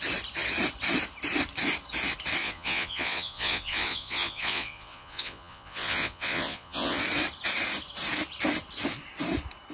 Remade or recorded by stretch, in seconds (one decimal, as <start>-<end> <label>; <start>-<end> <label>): 0.0-2.4 recorded; 2.4-7.0 remade; 7.0-9.7 recorded